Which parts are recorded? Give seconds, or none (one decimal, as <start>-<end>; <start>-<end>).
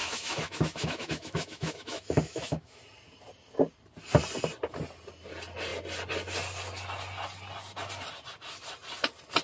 2.8-9.4